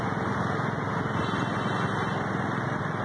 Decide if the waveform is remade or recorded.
recorded